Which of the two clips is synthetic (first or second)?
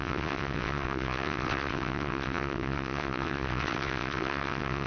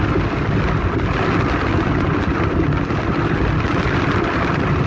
first